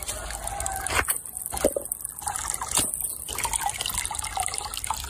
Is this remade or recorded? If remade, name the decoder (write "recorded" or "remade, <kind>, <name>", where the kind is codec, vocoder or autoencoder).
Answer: recorded